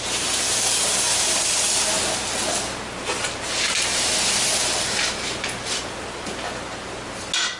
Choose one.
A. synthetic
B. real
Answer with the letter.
B